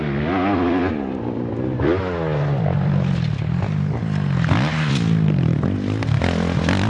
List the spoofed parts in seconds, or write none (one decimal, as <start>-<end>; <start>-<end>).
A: none